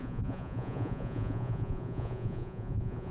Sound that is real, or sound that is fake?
fake